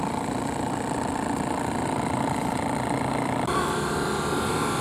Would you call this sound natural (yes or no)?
yes